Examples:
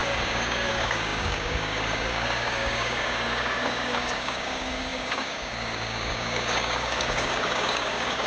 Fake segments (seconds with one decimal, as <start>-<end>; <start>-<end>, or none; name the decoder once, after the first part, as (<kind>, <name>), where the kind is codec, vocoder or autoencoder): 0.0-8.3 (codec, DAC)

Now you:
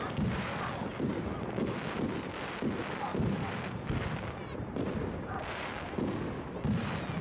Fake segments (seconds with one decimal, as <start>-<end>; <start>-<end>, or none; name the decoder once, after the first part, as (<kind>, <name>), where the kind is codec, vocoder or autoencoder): none

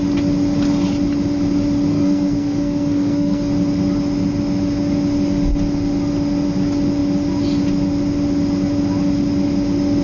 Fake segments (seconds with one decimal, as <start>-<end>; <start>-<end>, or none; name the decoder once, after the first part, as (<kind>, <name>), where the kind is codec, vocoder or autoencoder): 1.9-3.5 (codec, SNAC)